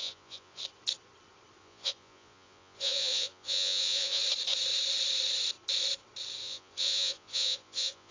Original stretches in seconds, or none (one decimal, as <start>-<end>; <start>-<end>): 0.6-1.6; 4.2-6.4